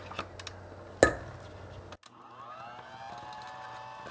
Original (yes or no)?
yes